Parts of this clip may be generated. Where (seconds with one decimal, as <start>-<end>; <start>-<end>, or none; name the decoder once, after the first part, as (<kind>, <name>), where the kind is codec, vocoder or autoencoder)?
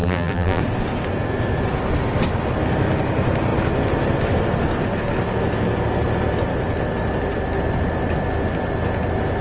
0.0-0.6 (vocoder, BigVGAN v2)